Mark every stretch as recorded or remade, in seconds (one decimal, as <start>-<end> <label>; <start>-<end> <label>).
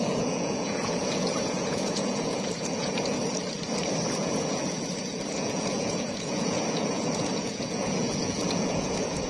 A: 0.0-3.2 remade; 3.2-4.1 recorded; 4.1-9.3 remade